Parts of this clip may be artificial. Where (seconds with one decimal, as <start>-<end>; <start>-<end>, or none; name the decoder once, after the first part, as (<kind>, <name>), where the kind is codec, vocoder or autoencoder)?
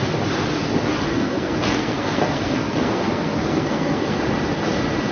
1.1-4.2 (codec, SNAC)